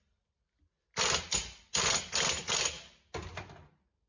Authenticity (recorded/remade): recorded